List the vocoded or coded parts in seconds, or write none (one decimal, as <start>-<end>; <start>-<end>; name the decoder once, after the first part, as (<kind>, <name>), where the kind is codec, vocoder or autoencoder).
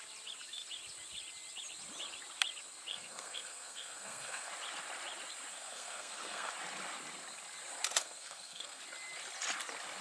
2.9-4.5 (codec, SNAC); 5.5-6.5; 8.0-8.8